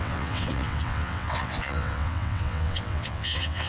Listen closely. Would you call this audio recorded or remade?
remade